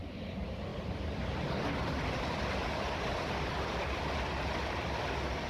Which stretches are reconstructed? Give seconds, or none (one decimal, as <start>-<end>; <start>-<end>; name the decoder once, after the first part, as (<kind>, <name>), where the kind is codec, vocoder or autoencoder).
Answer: none